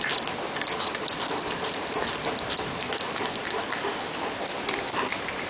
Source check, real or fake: fake